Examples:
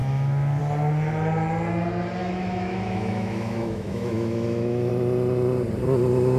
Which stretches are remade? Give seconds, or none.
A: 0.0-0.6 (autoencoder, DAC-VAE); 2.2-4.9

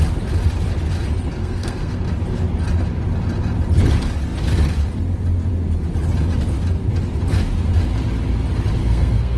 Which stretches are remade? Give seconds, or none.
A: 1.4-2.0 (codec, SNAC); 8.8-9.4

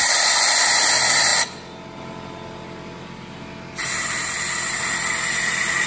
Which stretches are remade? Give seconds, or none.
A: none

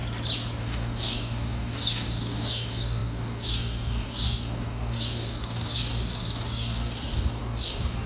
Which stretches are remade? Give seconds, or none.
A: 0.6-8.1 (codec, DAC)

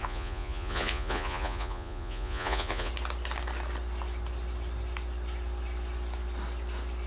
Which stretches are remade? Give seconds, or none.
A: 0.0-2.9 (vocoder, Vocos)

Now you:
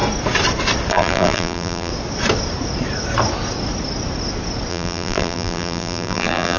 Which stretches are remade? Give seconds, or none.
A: 0.9-1.9 (vocoder, BigVGAN v2); 4.7-6.6